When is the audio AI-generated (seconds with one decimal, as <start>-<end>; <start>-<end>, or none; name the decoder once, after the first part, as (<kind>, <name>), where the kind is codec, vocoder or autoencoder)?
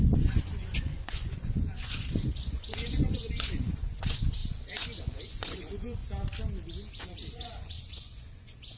0.0-6.0 (vocoder, Vocos); 7.0-8.8